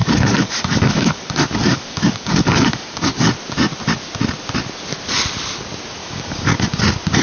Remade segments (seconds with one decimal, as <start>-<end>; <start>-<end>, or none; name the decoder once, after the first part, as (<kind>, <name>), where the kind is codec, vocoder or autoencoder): 0.0-3.3 (codec, DAC); 6.0-6.5